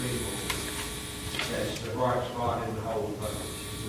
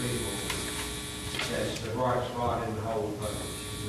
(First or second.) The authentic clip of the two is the second